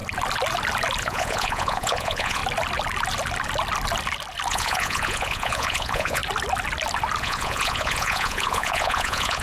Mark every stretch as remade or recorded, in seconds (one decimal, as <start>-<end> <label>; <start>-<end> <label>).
0.0-1.0 recorded; 1.0-2.4 remade; 2.4-4.5 recorded; 4.5-6.2 remade; 6.2-7.2 recorded; 7.2-9.4 remade